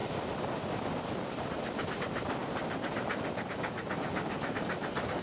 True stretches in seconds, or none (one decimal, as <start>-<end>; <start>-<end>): 0.0-5.2